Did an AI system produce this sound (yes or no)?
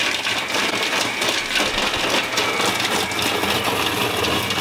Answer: no